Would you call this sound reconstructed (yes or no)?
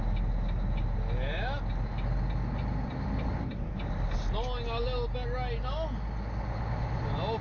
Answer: no